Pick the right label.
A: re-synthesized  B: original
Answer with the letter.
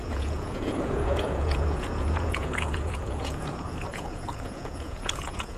A